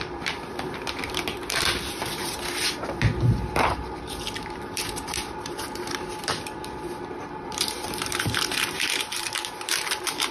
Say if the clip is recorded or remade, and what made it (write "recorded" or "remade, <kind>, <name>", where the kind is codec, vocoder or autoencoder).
remade, vocoder, BigVGAN v2